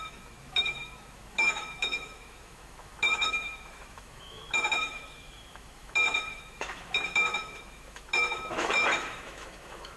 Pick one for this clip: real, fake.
fake